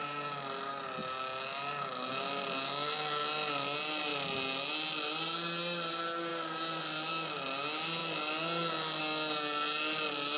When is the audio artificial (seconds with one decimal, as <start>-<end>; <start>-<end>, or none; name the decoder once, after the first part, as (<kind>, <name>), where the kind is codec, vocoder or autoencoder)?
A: none